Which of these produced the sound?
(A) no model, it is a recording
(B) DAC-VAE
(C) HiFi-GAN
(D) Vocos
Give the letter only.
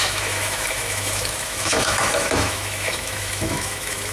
B